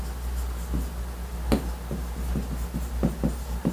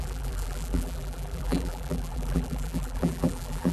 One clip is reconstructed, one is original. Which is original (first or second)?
first